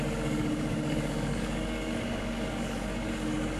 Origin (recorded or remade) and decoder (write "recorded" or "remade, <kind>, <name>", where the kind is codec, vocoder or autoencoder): remade, codec, DAC